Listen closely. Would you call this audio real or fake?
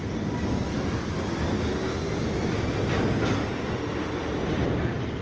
real